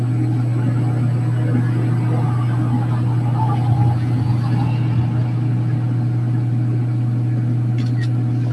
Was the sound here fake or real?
real